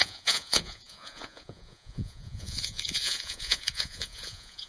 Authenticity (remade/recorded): remade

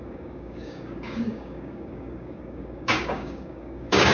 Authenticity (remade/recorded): remade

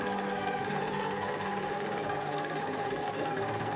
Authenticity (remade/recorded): remade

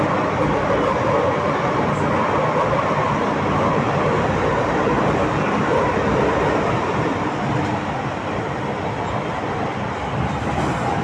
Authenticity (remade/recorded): recorded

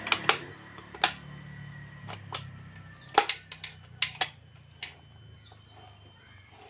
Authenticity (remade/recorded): recorded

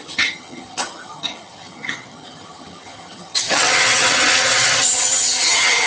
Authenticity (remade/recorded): remade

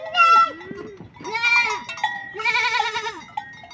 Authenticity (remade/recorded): recorded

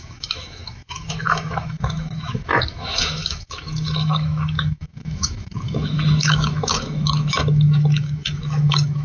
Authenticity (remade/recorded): remade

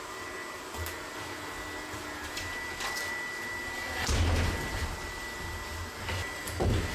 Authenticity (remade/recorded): recorded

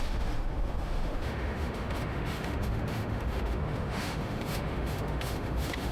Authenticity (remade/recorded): remade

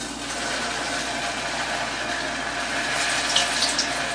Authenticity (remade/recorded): recorded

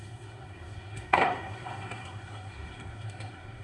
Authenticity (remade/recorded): remade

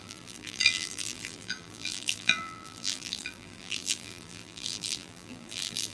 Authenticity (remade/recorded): remade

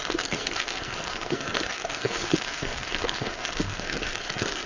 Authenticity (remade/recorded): remade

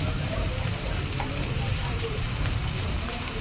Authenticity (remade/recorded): remade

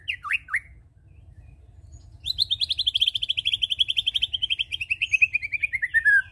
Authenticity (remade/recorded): recorded